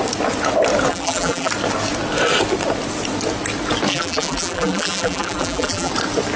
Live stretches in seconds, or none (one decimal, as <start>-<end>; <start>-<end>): 0.0-0.9; 1.5-3.9; 5.9-6.4